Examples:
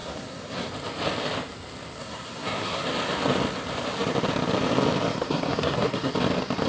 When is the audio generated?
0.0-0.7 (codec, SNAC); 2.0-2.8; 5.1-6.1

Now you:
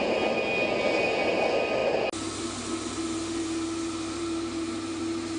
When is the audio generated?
none

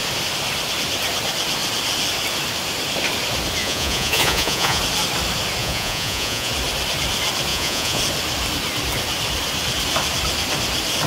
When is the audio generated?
3.6-4.8 (vocoder, Vocos); 5.6-6.5; 7.5-8.0

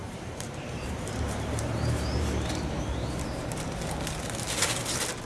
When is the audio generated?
0.0-3.2 (vocoder, BigVGAN v2)

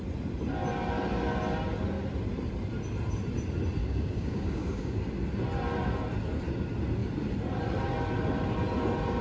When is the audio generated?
3.8-5.0 (codec, DAC)

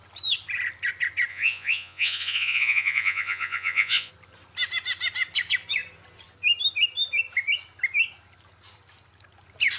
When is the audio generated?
1.3-4.1 (vocoder, Vocos)